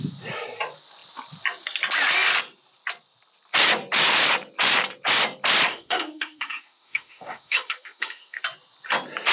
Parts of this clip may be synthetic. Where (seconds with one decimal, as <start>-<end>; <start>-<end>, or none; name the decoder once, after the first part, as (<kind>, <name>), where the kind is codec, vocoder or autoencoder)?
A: 5.7-8.4 (autoencoder, DAC-VAE)